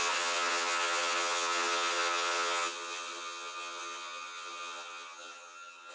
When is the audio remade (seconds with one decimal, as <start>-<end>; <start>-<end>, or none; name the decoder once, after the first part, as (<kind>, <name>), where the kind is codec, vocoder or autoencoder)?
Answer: 0.0-5.9 (vocoder, HiFi-GAN)